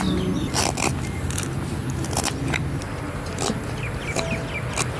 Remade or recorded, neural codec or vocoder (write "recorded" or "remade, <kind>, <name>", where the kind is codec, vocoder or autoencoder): recorded